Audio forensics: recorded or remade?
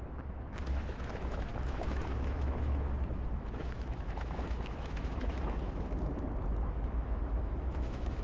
remade